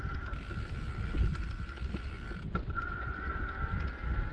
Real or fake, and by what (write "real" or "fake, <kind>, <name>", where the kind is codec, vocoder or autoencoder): real